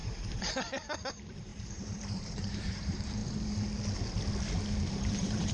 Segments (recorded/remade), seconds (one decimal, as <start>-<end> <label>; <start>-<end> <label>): 0.0-3.2 remade; 3.2-4.9 recorded; 4.9-5.5 remade